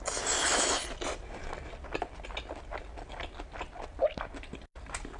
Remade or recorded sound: recorded